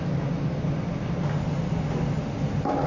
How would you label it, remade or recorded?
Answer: recorded